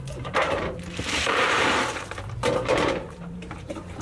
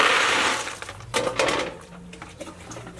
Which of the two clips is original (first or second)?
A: second